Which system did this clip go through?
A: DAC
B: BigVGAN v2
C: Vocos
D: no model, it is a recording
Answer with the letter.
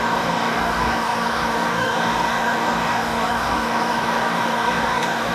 A